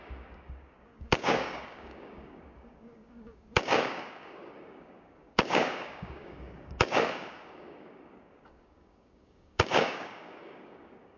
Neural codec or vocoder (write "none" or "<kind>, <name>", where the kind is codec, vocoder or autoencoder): codec, DAC